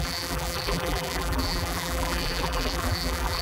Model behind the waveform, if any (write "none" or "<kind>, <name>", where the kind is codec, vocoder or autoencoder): vocoder, BigVGAN v2